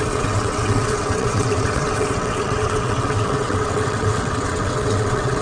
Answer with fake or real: fake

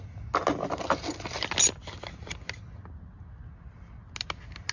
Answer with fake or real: real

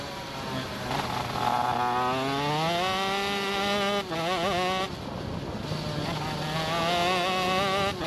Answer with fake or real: real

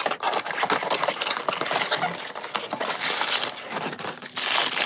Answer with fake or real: real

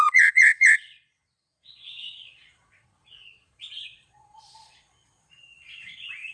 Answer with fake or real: fake